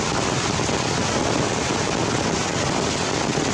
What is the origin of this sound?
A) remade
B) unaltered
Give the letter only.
B